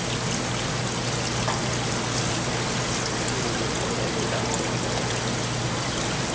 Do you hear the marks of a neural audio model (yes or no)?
no